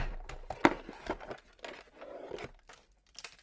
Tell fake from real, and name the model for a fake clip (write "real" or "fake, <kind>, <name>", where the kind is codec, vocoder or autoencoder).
real